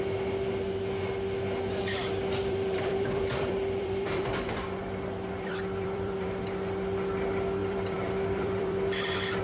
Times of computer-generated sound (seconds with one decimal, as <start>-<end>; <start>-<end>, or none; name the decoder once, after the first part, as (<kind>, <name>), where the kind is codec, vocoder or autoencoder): 2.4-6.4 (vocoder, BigVGAN v2); 7.6-9.4